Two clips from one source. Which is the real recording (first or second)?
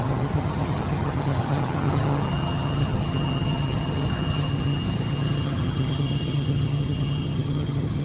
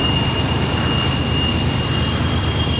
second